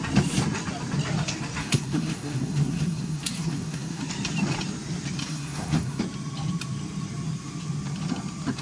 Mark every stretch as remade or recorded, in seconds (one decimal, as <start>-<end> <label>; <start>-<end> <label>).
0.0-1.6 recorded; 1.6-4.0 remade; 4.0-5.2 recorded; 5.2-6.0 remade; 6.0-8.6 recorded